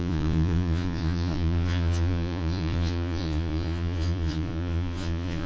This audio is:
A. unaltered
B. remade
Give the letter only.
B